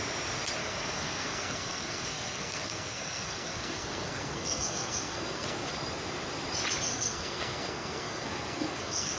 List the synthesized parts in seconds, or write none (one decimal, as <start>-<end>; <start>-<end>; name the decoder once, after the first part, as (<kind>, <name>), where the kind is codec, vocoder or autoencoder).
0.6-5.7 (codec, SNAC); 6.9-9.2